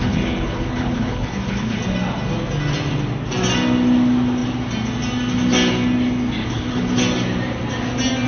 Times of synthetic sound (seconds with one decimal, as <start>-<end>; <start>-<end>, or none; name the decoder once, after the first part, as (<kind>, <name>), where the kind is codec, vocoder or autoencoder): 0.0-1.8 (codec, HILCodec); 6.4-6.9